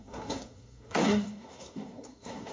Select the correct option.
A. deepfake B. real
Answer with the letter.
A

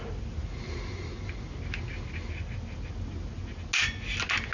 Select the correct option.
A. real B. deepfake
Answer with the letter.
A